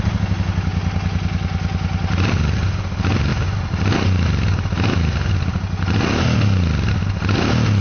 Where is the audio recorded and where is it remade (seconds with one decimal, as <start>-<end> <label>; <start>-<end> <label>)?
0.0-7.8 recorded